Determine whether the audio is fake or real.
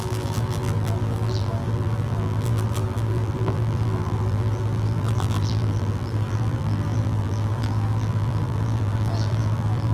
fake